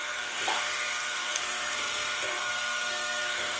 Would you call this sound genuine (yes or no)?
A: no